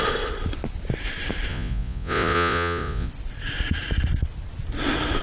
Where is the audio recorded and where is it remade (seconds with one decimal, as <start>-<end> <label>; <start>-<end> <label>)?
0.0-1.5 recorded; 1.5-3.1 remade; 3.1-5.2 recorded